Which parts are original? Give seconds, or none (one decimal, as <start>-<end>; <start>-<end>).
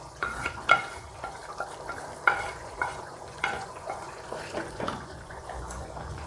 1.4-2.5